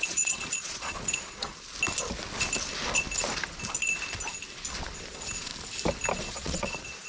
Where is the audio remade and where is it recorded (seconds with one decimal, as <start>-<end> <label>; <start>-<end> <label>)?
0.0-1.5 remade; 1.5-5.1 recorded; 5.1-5.5 remade; 5.5-6.2 recorded; 6.2-7.1 remade